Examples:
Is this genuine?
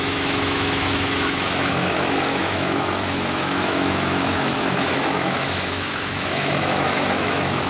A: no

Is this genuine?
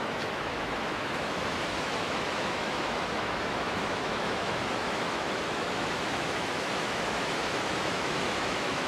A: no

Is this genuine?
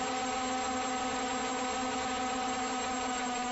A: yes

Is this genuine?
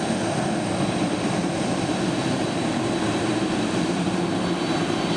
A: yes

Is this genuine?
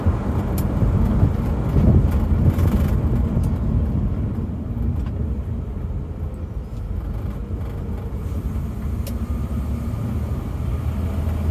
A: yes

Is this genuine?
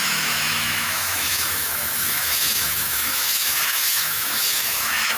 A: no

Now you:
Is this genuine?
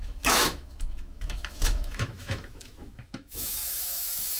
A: no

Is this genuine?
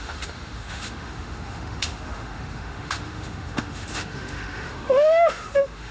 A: no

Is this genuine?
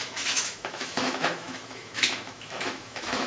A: no